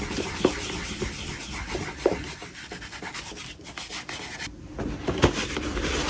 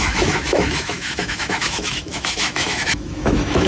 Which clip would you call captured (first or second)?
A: first